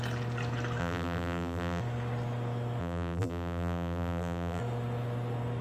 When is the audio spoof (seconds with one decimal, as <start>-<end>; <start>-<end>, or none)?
0.8-1.8; 2.8-4.6